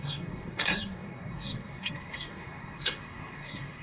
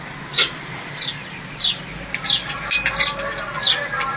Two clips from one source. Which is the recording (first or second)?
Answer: second